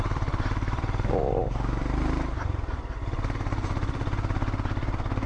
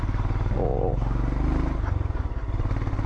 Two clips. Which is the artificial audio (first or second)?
first